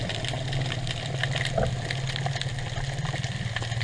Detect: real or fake real